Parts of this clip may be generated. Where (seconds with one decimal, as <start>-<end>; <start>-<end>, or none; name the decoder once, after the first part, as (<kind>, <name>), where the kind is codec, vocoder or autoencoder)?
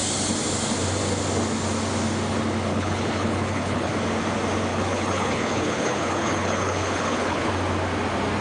2.7-3.9 (codec, HILCodec); 4.7-7.5